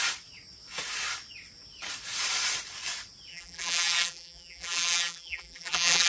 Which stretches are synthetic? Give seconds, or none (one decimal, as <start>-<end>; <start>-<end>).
3.3-6.1